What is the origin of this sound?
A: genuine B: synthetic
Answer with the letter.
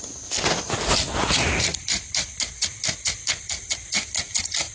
A